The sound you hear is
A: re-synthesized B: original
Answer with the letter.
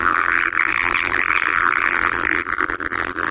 A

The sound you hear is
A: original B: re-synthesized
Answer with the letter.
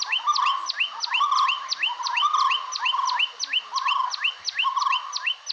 A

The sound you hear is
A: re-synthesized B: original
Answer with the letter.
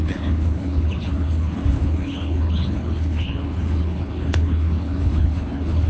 A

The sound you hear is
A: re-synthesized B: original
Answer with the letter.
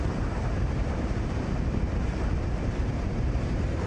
A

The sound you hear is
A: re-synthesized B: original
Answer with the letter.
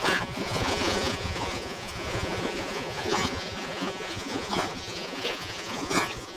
A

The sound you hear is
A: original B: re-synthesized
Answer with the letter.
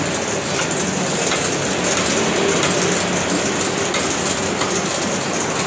B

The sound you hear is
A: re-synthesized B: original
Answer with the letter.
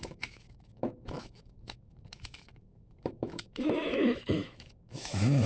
A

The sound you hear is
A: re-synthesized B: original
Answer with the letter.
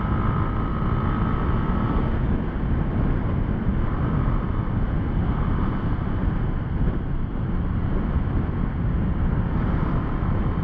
B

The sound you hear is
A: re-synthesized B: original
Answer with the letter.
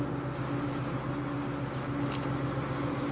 B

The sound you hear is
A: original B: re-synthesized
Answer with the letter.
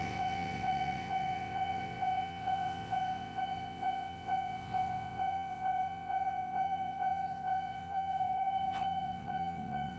B